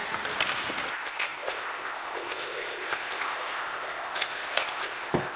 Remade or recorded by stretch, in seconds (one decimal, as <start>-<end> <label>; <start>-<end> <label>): 0.0-0.9 recorded; 0.9-5.4 remade